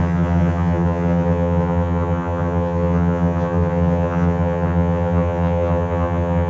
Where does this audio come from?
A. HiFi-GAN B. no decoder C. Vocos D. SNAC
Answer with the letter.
A